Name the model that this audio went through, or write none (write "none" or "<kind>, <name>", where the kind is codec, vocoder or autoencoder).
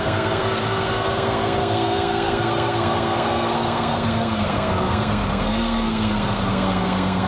codec, SNAC